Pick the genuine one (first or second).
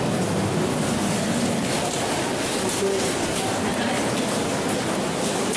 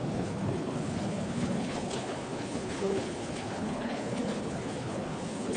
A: first